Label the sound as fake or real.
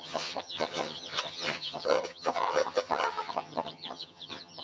fake